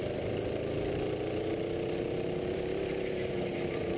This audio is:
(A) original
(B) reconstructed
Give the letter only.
A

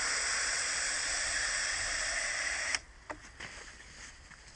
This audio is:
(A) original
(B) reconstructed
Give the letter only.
A